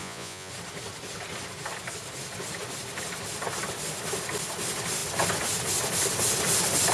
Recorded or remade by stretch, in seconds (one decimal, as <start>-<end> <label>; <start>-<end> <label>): 0.0-0.5 remade; 0.5-6.9 recorded